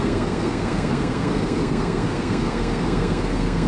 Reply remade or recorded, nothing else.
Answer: remade